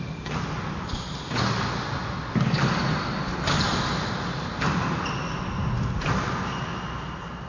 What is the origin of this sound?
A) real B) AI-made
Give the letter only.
A